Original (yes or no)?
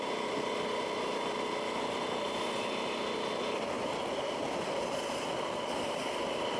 yes